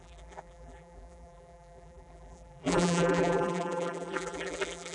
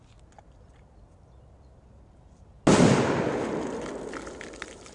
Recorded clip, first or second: second